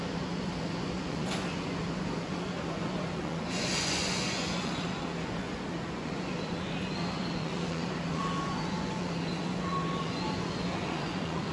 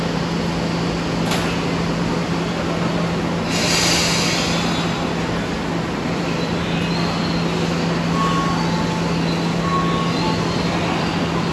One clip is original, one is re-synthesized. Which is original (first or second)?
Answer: second